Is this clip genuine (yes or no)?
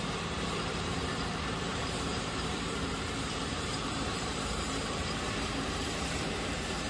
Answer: no